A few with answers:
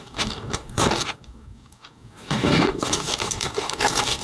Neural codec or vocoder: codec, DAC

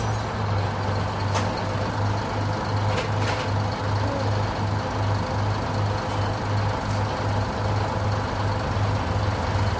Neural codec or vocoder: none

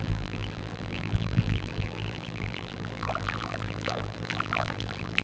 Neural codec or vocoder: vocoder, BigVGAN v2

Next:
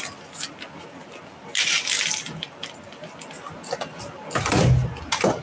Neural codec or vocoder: none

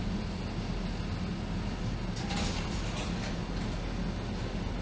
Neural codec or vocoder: none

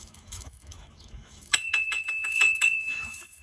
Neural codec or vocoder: autoencoder, DAC-VAE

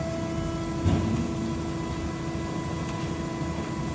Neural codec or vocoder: none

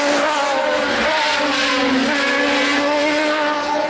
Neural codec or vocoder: none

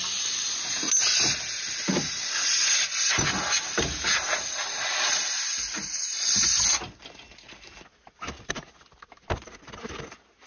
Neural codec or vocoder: none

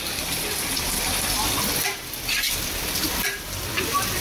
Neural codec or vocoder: vocoder, BigVGAN v2